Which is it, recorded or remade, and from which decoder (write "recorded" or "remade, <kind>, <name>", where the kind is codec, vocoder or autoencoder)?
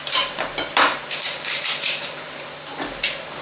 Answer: remade, vocoder, BigVGAN v2